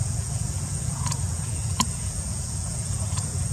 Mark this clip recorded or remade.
remade